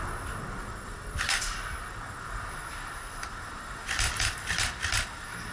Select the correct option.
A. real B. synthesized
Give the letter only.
A